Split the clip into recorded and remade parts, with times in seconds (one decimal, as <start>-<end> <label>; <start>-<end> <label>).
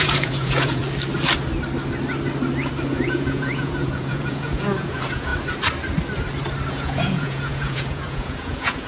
0.0-0.8 remade; 0.8-2.9 recorded; 2.9-5.3 remade; 5.3-6.7 recorded; 6.7-8.9 remade